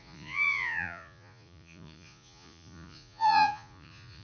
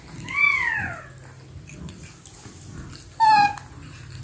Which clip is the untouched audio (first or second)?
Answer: second